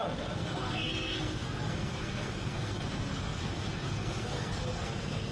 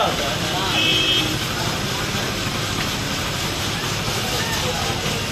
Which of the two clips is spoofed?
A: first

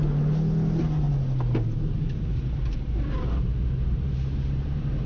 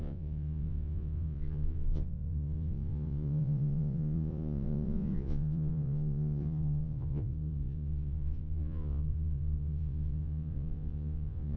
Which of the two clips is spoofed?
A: second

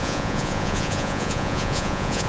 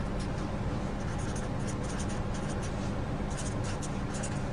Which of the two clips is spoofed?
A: first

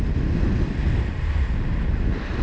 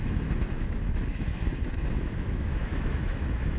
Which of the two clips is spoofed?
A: second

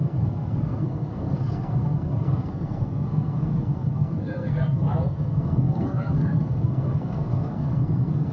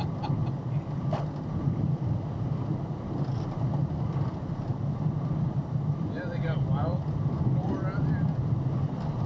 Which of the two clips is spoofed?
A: first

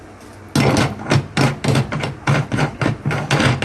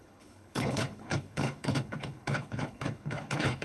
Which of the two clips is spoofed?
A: second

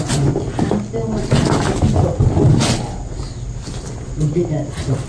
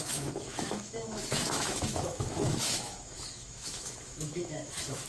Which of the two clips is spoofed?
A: second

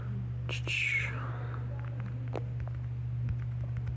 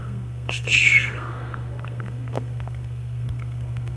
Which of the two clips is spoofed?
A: second